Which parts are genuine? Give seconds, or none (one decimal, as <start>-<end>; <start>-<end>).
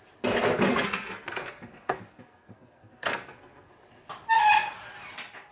0.0-0.7; 3.7-5.5